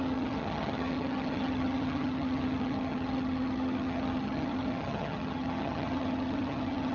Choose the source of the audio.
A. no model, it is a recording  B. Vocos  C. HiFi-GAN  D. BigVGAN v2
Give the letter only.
C